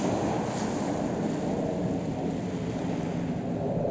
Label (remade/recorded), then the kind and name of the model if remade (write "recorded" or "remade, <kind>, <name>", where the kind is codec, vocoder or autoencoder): recorded